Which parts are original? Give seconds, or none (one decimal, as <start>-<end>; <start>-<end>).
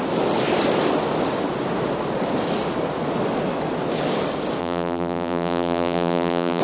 0.0-4.6